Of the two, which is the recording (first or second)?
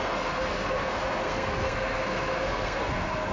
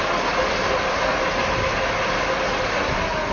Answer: second